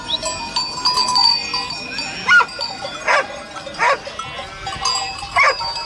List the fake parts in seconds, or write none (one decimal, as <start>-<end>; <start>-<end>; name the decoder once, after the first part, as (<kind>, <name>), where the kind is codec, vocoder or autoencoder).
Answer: none